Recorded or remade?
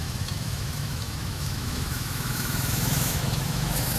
remade